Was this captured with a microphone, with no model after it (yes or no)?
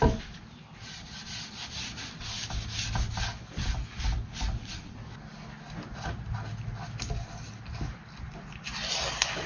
yes